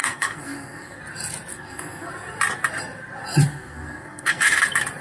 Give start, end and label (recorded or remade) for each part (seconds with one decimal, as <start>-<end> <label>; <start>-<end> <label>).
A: 0.0-1.0 remade; 1.0-1.5 recorded; 1.5-2.1 remade; 2.1-3.5 recorded; 3.5-4.6 remade; 4.6-5.0 recorded